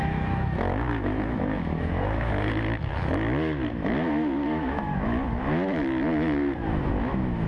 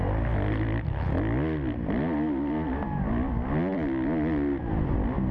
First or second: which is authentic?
second